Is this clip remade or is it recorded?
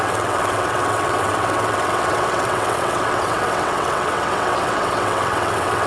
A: remade